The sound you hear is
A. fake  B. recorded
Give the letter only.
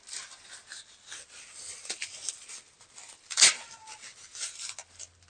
B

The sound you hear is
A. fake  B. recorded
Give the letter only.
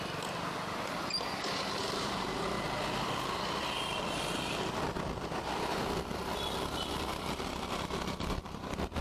A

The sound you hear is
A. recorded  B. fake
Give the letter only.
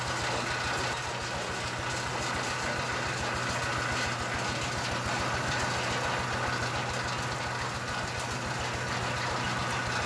A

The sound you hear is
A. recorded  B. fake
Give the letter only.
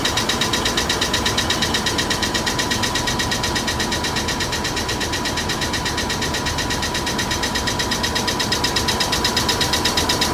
B